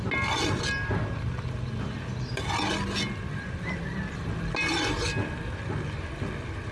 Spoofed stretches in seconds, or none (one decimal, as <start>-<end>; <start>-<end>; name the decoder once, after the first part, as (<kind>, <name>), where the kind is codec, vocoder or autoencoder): none